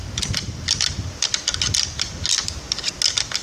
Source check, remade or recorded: recorded